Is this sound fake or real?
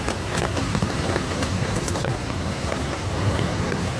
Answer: fake